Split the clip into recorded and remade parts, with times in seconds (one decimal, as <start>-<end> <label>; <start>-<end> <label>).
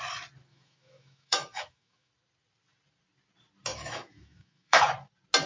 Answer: 0.0-0.5 recorded; 0.5-2.1 remade; 2.1-3.7 recorded; 3.7-4.8 remade; 4.8-5.5 recorded